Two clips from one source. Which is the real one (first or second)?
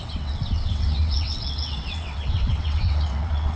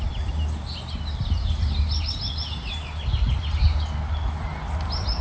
second